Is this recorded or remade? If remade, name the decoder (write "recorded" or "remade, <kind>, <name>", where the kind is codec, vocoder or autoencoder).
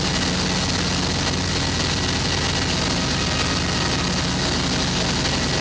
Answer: recorded